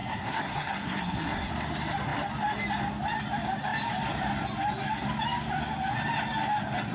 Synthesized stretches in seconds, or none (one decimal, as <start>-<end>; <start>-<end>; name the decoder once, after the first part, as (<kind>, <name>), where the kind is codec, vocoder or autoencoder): 0.0-1.5 (codec, SNAC)